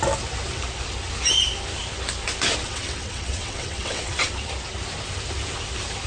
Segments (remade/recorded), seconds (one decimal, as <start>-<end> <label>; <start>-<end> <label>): 0.0-2.6 recorded; 2.6-4.3 remade; 4.3-6.1 recorded

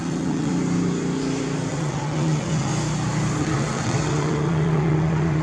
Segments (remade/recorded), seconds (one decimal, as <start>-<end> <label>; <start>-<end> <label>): 0.0-0.5 remade; 0.5-1.7 recorded; 1.7-2.7 remade; 2.7-3.4 recorded; 3.4-5.4 remade

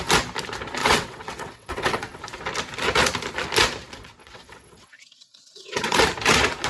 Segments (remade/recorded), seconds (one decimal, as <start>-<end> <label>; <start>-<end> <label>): 0.0-0.8 recorded; 0.8-2.2 remade; 2.2-4.2 recorded; 4.2-6.0 remade; 6.0-6.7 recorded

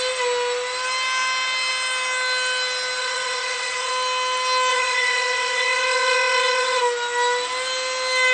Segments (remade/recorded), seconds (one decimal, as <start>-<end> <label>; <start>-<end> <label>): 0.0-3.0 recorded; 3.0-3.9 remade; 3.9-4.7 recorded; 4.7-6.8 remade; 6.8-8.3 recorded

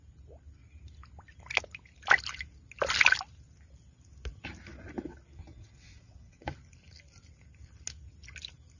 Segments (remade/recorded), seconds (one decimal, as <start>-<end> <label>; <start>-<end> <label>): 0.0-5.5 recorded; 5.5-6.5 remade; 6.5-8.8 recorded

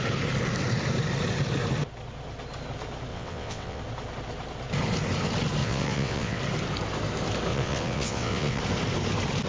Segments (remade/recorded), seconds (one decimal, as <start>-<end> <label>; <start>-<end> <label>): 0.0-3.1 recorded; 3.1-3.8 remade; 3.8-5.6 recorded; 5.6-6.4 remade; 6.4-7.5 recorded; 7.5-8.6 remade; 8.6-9.5 recorded

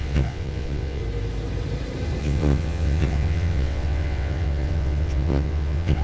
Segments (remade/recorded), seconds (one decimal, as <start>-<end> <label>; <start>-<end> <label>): 0.0-1.0 remade; 1.0-2.2 recorded; 2.2-6.0 remade